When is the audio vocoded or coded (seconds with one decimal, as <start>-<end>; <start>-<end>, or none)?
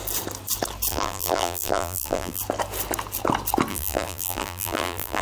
0.9-2.4; 3.7-5.2